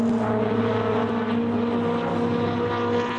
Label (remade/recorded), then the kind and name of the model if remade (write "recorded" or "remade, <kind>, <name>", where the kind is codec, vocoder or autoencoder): recorded